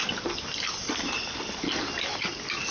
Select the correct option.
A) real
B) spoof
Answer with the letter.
A